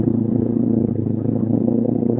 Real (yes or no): no